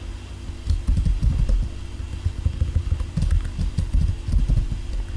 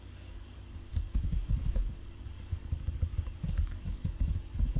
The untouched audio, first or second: first